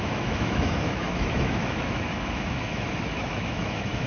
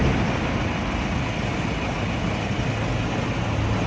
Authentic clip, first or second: second